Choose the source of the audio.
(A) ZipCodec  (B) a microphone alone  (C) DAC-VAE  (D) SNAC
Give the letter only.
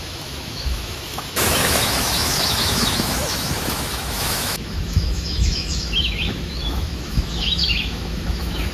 C